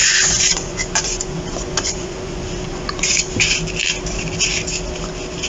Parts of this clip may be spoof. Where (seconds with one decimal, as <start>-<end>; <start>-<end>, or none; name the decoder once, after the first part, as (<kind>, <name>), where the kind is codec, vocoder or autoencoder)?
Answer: 0.0-3.3 (vocoder, Vocos)